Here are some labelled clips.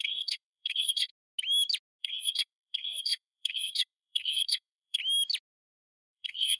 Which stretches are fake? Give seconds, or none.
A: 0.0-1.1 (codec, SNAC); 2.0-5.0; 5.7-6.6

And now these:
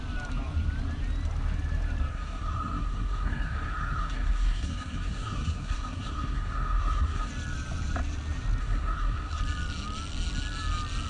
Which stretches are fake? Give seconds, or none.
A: 2.1-7.3 (codec, SNAC); 8.6-9.4

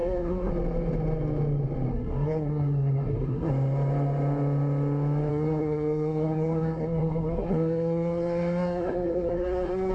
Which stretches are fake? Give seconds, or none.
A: 0.0-0.5 (codec, SNAC); 1.9-3.5; 5.3-9.9

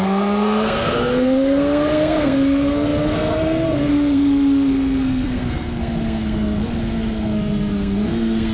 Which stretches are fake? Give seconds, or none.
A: 0.0-8.5 (codec, SNAC)

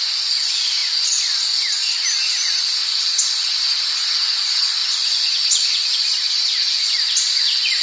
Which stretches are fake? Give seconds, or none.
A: none

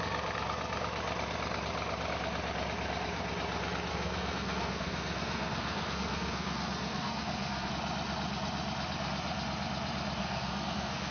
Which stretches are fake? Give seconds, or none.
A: 3.9-7.7 (codec, SNAC); 10.2-11.1

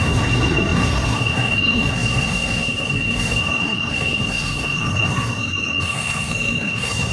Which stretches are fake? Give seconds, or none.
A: 0.0-7.1 (codec, SNAC)

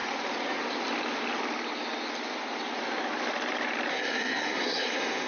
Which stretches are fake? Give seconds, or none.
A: 3.9-5.3 (codec, SNAC)